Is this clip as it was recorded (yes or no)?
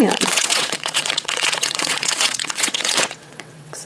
no